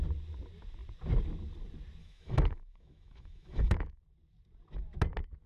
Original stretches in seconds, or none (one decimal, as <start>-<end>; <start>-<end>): 0.0-2.0; 4.0-5.5